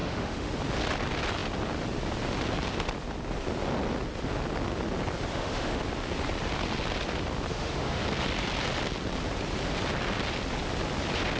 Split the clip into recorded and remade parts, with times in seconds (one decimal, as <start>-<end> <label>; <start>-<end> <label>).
0.0-0.5 remade; 0.5-5.3 recorded; 5.3-5.8 remade; 5.8-7.5 recorded; 7.5-8.0 remade; 8.0-11.4 recorded